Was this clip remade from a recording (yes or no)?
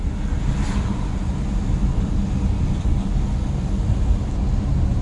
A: no